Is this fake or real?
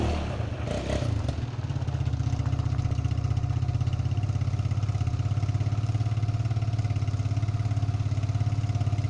real